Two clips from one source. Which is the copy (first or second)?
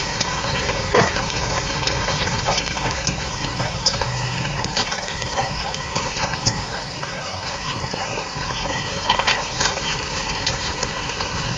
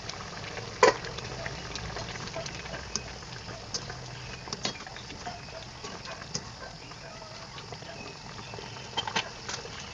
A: first